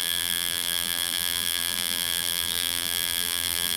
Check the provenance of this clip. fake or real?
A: fake